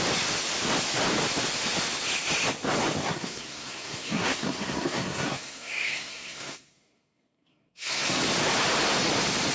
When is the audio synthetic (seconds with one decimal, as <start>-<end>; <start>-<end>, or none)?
3.0-8.2